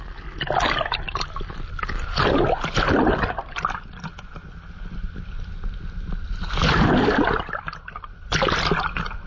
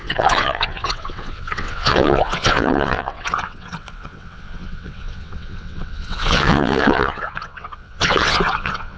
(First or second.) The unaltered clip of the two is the first